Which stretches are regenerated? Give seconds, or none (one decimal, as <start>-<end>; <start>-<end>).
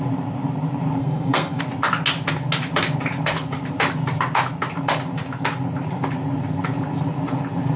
1.0-1.6